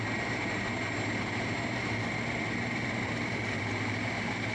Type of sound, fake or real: fake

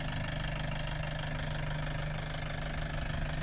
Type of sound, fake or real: real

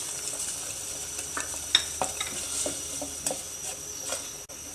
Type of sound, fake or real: real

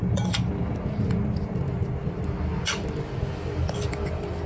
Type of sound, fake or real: real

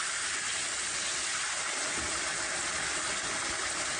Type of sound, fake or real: real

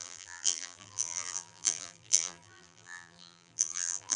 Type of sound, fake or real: fake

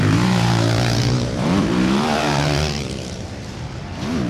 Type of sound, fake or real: fake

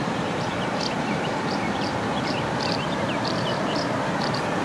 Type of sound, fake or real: fake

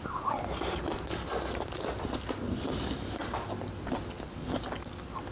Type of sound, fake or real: real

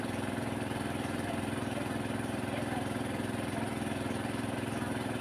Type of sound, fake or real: fake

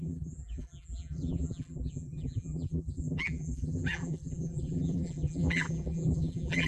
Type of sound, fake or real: fake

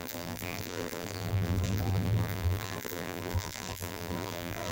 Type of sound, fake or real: fake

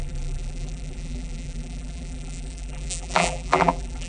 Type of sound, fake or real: fake